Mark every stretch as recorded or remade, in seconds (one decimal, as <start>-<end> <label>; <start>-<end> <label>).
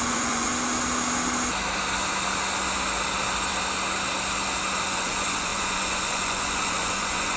0.0-0.5 remade; 0.5-4.9 recorded; 4.9-7.4 remade